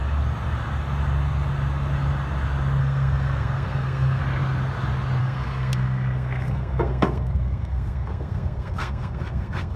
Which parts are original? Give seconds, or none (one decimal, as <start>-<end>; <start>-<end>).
0.0-2.8; 4.2-5.2